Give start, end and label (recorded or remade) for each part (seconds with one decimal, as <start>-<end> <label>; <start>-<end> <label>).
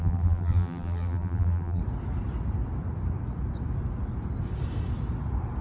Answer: 0.0-1.8 remade; 1.8-5.6 recorded